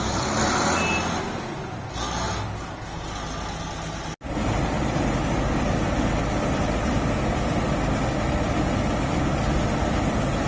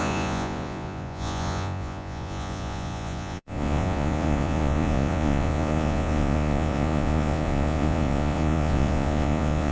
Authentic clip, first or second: first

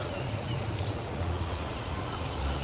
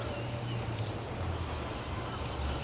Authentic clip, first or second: second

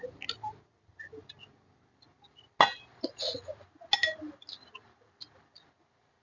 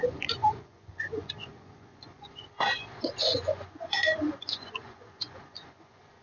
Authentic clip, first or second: first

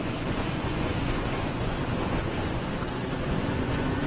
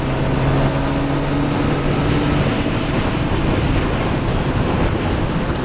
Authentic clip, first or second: second